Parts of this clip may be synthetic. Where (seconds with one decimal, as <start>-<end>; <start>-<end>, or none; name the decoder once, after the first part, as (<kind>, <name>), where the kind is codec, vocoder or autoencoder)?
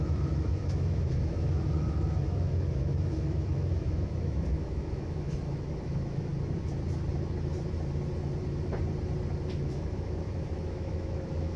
0.0-6.3 (autoencoder, DAC-VAE); 9.5-11.6